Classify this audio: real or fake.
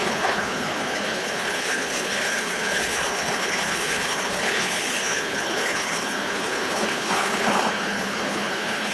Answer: fake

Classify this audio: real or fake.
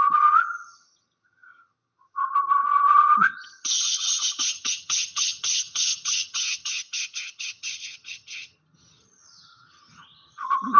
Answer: fake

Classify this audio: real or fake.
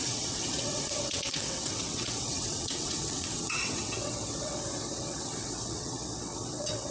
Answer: fake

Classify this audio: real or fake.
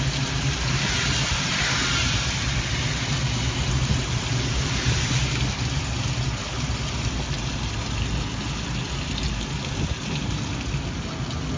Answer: real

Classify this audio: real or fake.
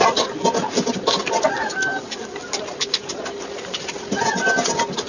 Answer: real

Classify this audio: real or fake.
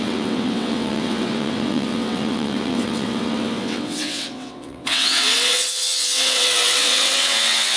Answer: fake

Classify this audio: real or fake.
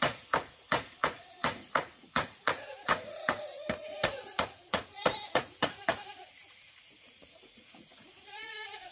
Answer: fake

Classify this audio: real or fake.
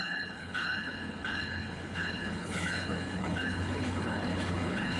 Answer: fake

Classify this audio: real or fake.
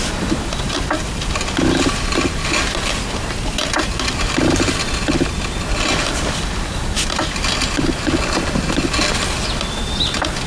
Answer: real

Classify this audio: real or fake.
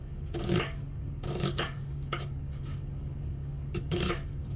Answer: fake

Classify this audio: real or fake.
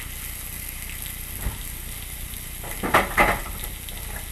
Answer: real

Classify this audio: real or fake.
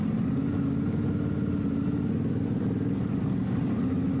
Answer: real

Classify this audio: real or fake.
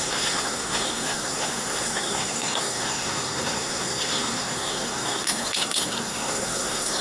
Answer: fake